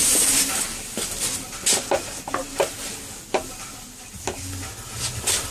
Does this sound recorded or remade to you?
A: recorded